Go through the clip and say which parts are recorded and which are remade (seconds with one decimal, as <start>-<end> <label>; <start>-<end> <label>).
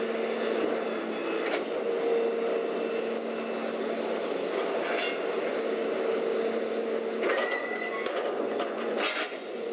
0.0-7.4 recorded; 7.4-9.7 remade